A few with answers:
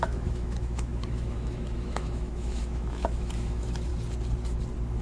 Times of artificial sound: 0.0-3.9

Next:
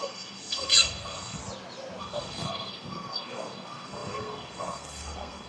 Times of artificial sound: 0.0-1.4; 2.0-5.5

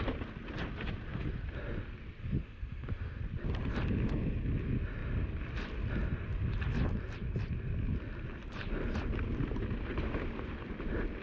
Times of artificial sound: 2.2-3.2

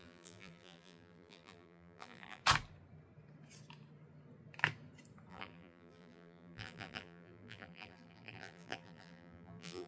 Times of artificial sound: 0.0-2.4; 5.3-9.9

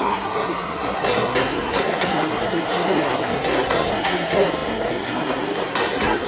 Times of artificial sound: 0.0-6.3

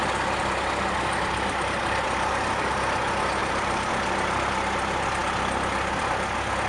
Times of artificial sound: 3.4-3.9

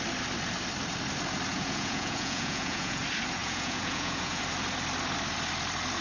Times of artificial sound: 1.5-3.0; 3.4-4.4